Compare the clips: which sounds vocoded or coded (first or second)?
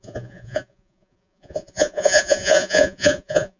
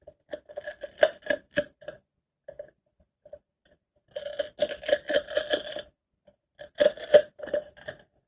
first